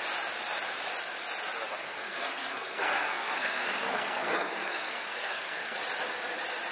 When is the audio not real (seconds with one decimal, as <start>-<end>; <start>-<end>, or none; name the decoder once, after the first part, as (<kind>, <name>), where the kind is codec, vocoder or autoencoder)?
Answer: 1.8-5.8 (codec, SNAC)